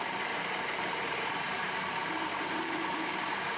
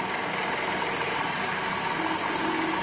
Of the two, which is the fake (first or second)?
first